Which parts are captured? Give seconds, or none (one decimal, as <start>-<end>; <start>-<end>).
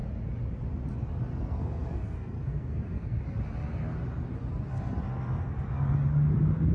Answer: 0.0-1.3; 3.2-6.7